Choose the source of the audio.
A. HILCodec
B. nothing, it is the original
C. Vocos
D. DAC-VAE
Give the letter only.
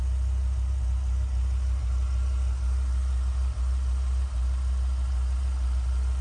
B